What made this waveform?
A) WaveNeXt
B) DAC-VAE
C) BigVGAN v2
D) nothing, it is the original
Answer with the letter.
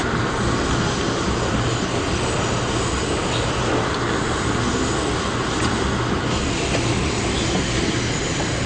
D